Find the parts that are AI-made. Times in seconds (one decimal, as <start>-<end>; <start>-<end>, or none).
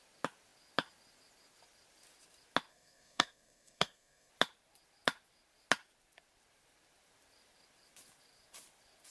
2.7-4.3